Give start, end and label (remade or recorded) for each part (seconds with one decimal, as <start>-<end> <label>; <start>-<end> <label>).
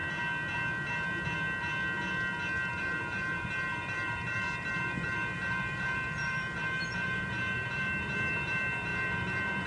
0.0-2.8 recorded; 2.8-9.7 remade